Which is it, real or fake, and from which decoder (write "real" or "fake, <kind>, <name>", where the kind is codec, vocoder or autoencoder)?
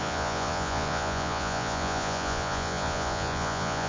fake, vocoder, Vocos